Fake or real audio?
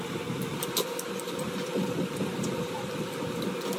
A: real